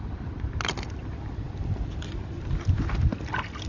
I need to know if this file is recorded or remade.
recorded